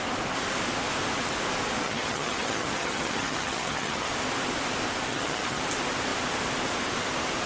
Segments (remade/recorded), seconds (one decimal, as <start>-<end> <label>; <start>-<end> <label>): 0.0-1.8 recorded; 1.8-4.1 remade; 4.1-5.1 recorded; 5.1-5.6 remade; 5.6-7.5 recorded